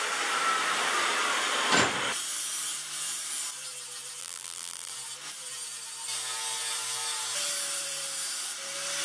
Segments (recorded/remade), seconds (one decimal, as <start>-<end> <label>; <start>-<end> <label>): 0.0-4.2 recorded; 4.2-4.9 remade; 4.9-9.0 recorded

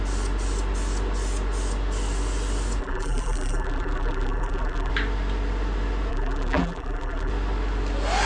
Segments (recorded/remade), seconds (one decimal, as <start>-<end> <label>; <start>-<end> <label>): 0.0-2.8 recorded; 2.8-4.9 remade; 4.9-6.1 recorded; 6.1-7.3 remade; 7.3-8.3 recorded

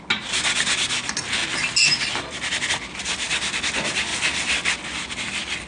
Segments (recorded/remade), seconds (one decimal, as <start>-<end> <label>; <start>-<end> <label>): 0.0-5.7 recorded

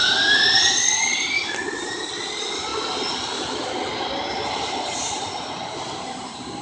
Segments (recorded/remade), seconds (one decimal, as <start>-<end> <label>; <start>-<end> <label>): 0.0-0.9 remade; 0.9-6.6 recorded